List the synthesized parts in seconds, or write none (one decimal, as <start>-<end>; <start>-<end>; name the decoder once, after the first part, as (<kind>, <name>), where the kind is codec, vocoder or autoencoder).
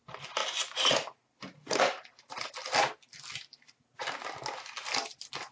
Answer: none